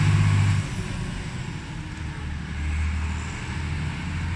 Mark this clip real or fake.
real